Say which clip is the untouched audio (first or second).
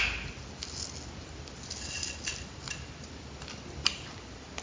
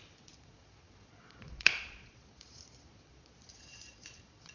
first